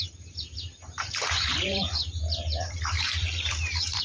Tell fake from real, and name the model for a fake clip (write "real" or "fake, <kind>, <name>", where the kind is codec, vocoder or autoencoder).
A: fake, vocoder, BigVGAN v2